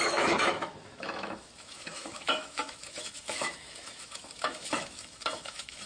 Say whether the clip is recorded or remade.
remade